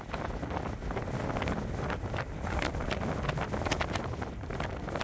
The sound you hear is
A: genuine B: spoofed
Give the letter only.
A